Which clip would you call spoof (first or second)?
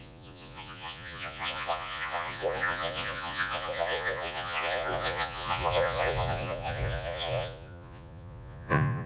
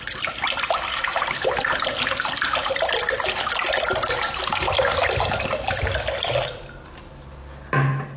first